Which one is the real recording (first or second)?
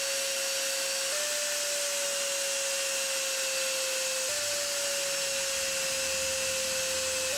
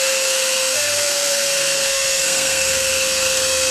first